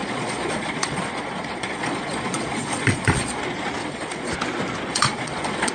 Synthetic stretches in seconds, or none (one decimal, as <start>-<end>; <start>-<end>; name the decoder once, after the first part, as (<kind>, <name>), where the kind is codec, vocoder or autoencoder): 0.0-3.4 (vocoder, Vocos); 3.8-4.3; 4.9-5.7